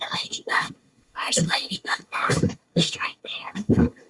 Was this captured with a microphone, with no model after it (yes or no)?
no